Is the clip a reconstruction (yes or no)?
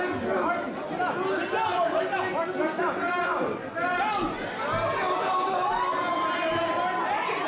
no